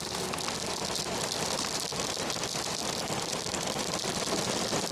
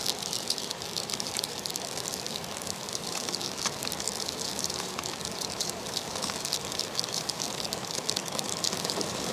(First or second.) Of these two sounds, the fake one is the second